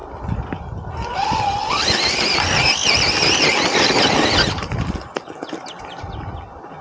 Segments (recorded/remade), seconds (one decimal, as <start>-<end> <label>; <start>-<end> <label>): 0.0-6.8 recorded